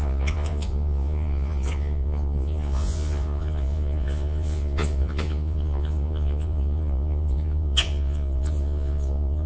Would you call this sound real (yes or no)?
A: no